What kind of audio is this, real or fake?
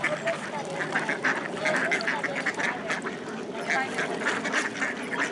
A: real